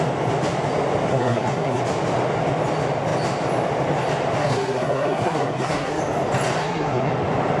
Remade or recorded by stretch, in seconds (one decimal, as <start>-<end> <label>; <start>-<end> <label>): 0.0-1.1 recorded; 1.1-1.8 remade; 1.8-4.4 recorded; 4.4-6.0 remade; 6.0-6.6 recorded; 6.6-7.1 remade; 7.1-7.6 recorded